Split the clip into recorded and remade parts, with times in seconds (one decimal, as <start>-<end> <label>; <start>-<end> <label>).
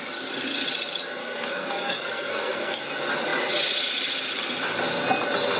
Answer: 0.0-1.2 recorded; 1.2-2.9 remade; 2.9-5.6 recorded